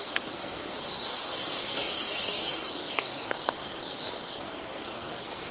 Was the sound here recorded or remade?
remade